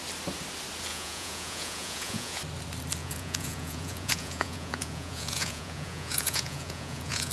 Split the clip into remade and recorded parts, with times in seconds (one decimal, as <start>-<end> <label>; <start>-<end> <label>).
0.0-0.9 recorded; 0.9-2.4 remade; 2.4-3.0 recorded; 3.0-7.3 remade